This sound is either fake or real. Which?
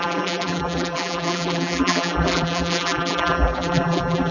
fake